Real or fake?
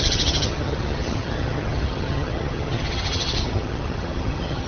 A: fake